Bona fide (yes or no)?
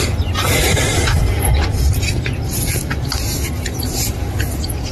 yes